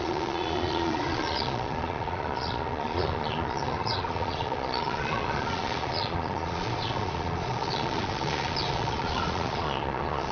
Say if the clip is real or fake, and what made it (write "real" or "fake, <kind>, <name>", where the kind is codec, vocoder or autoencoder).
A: fake, vocoder, Vocos